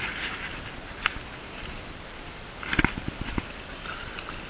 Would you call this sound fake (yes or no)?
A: no